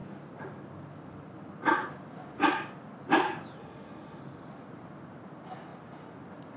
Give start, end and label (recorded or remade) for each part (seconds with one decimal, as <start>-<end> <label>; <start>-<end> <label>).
0.0-3.6 recorded; 3.6-4.2 remade; 4.2-6.6 recorded